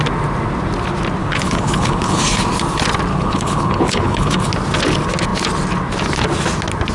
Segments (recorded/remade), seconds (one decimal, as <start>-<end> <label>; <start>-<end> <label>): 0.0-1.2 recorded; 1.2-2.2 remade; 2.2-3.1 recorded; 3.1-4.5 remade; 4.5-6.9 recorded